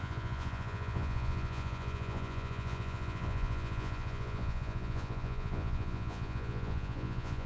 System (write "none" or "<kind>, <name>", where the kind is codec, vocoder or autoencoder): vocoder, Vocos